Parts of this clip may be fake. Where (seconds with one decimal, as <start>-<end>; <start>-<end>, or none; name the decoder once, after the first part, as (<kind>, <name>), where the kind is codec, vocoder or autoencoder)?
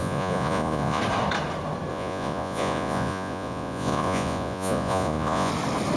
0.0-1.0 (vocoder, Vocos); 1.9-5.5